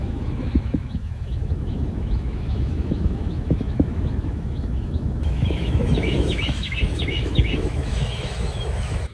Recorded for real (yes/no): no